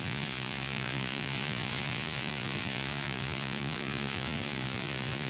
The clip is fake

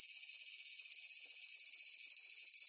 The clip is real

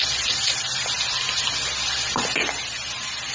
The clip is real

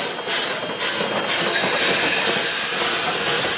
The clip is real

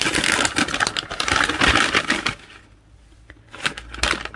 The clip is real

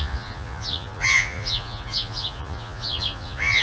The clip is fake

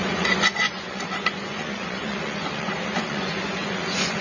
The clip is fake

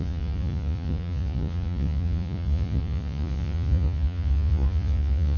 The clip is fake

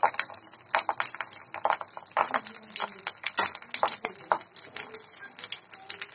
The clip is real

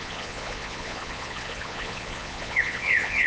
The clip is fake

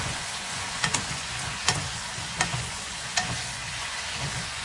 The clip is fake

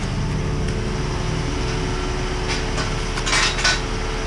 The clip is real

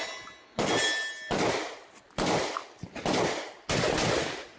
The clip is real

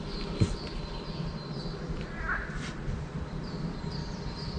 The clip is real